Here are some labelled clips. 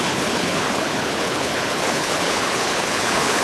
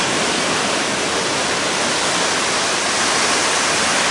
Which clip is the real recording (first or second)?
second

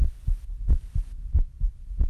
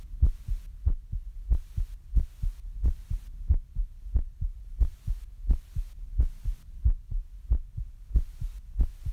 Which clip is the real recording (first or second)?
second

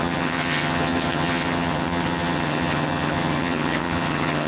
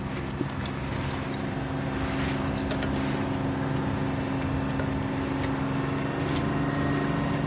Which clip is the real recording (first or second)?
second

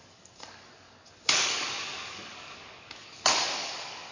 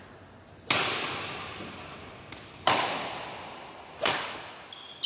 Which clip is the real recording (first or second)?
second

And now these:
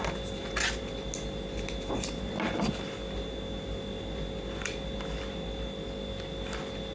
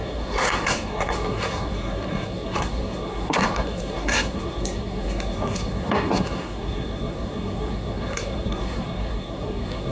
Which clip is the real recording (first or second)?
first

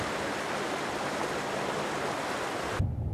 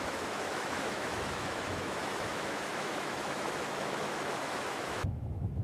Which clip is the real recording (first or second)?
first